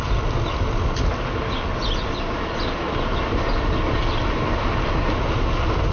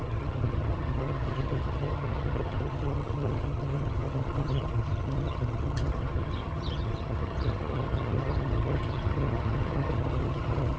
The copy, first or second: second